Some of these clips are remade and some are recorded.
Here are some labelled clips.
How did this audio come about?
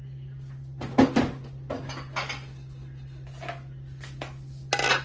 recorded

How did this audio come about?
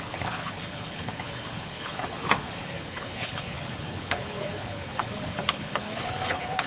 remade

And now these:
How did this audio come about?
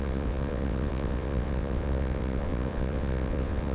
remade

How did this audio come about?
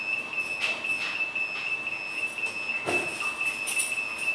recorded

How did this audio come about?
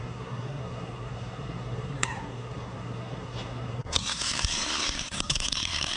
remade